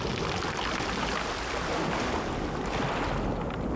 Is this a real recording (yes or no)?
yes